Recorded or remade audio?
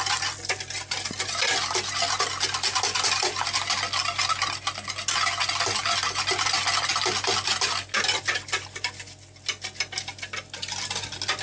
recorded